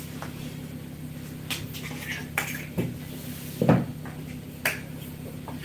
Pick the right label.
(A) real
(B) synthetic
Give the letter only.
A